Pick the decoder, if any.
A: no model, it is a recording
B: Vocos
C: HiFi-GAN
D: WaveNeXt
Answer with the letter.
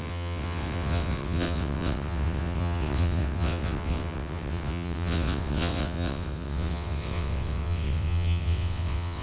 D